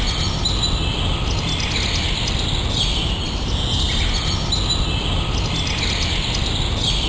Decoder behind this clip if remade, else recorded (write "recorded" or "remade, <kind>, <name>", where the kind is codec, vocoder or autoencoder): recorded